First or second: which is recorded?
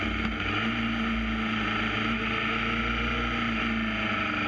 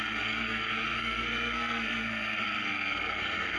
first